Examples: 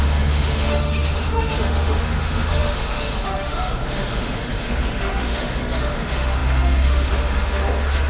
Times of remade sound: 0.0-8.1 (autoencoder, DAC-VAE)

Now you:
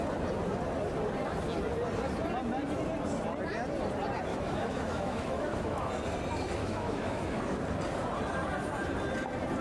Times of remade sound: 4.3-5.9 (autoencoder, DAC-VAE); 6.6-7.4

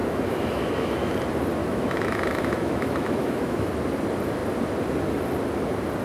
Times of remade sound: 0.0-1.1 (autoencoder, DAC-VAE); 1.6-3.7

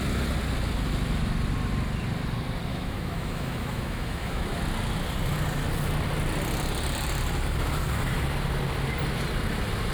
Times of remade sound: 2.7-4.6 (autoencoder, DAC-VAE)

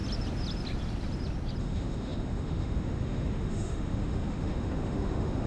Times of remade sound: 1.6-5.5 (autoencoder, DAC-VAE)

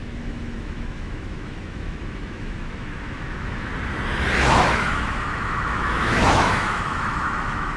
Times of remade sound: 0.0-3.7 (autoencoder, DAC-VAE); 4.5-7.8

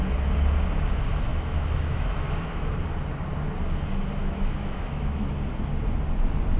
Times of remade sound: 1.3-2.7 (autoencoder, DAC-VAE); 4.2-5.3

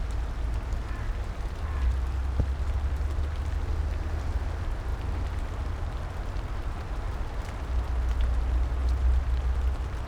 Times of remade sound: none